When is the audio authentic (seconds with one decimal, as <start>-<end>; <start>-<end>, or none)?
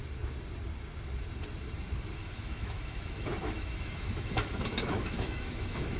0.0-2.2